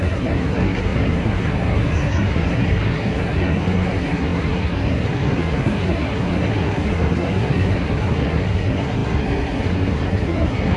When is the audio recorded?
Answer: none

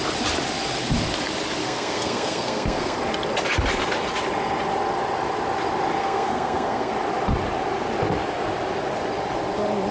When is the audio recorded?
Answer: 0.0-1.6; 3.0-6.0; 6.9-9.9

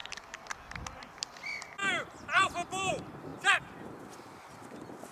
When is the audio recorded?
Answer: 0.0-5.1

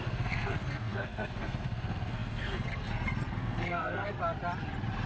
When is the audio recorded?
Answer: 4.2-5.1